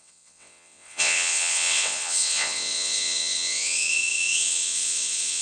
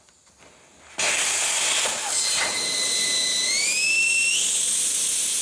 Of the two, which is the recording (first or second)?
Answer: second